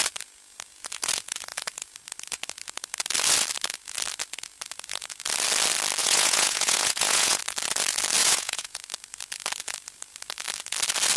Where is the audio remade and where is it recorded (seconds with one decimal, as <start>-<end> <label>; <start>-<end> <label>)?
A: 0.0-6.0 recorded; 6.0-7.4 remade; 7.4-8.2 recorded; 8.2-8.8 remade; 8.8-11.2 recorded